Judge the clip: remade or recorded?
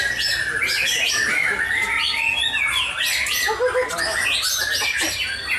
recorded